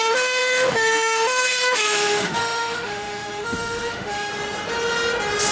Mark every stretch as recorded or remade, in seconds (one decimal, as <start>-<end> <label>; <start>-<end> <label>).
0.0-4.3 remade; 4.3-5.5 recorded